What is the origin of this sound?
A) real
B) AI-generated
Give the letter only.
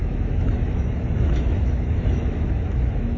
B